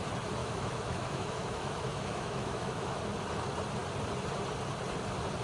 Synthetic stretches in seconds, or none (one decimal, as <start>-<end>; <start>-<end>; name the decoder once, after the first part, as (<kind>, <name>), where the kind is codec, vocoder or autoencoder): 0.4-3.0 (autoencoder, DAC-VAE)

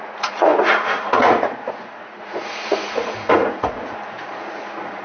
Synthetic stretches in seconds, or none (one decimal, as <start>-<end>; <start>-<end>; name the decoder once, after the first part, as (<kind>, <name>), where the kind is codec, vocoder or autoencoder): 0.0-5.0 (vocoder, Vocos)

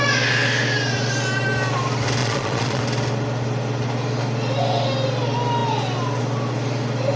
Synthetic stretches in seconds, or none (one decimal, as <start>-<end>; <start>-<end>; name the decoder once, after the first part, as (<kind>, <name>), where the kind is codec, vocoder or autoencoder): 2.2-2.8 (vocoder, Vocos)